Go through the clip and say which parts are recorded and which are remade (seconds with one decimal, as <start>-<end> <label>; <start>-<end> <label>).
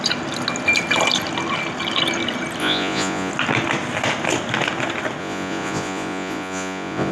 0.0-2.6 recorded; 2.6-3.3 remade; 3.3-5.2 recorded; 5.2-7.1 remade